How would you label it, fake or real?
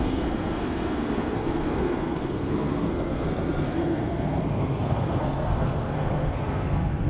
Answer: fake